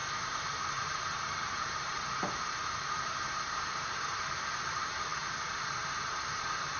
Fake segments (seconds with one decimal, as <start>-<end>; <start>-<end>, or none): 0.0-6.8